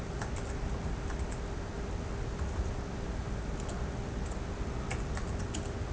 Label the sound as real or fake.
real